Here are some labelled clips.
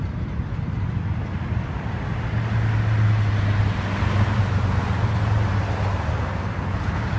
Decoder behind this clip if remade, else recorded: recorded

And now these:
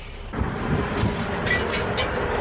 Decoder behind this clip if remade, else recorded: recorded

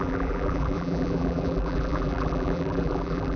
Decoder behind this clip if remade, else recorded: remade, vocoder, BigVGAN v2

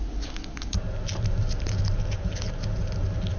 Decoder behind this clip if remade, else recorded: recorded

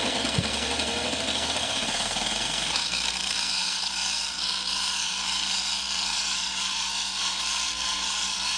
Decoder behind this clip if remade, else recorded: remade, codec, SNAC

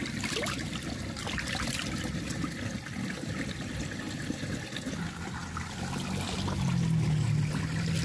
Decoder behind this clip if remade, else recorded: recorded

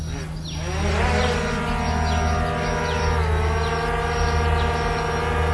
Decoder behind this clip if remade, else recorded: recorded